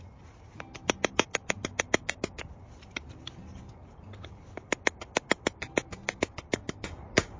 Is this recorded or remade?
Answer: remade